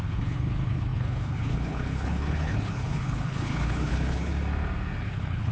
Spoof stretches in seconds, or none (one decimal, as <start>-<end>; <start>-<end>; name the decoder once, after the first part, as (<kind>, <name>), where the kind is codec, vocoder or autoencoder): 0.0-4.3 (codec, HILCodec); 5.0-5.5